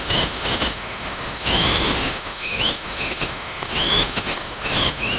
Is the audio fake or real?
fake